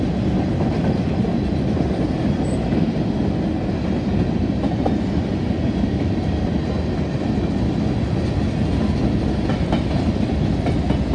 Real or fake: real